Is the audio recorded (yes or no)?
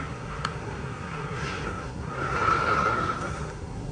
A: no